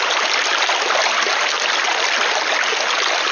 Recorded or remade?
recorded